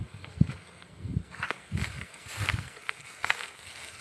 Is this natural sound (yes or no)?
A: no